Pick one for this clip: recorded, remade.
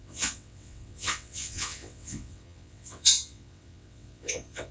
remade